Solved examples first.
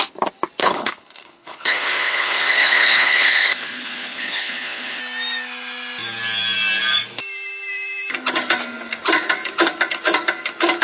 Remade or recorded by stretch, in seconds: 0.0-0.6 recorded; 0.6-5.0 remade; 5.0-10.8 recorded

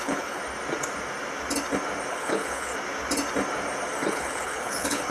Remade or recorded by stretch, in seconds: 0.0-0.4 remade; 0.4-2.1 recorded; 2.1-2.7 remade; 2.7-4.1 recorded; 4.1-5.1 remade

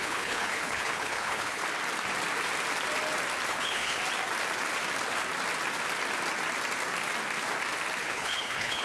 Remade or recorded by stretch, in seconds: 0.0-1.6 remade; 1.6-3.5 recorded; 3.5-4.0 remade; 4.0-8.0 recorded; 8.0-8.8 remade

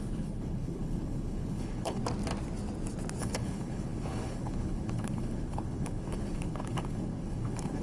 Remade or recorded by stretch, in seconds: 0.0-2.0 remade; 2.0-3.2 recorded; 3.2-7.8 remade

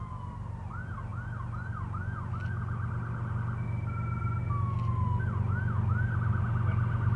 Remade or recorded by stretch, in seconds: 0.0-7.2 recorded

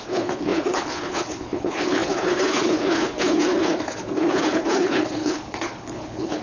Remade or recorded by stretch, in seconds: 0.0-6.4 remade

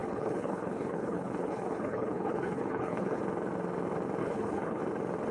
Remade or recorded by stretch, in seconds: 0.0-3.2 remade; 3.2-4.2 recorded; 4.2-4.8 remade; 4.8-5.3 recorded